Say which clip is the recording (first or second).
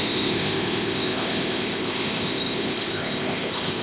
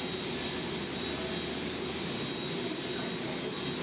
second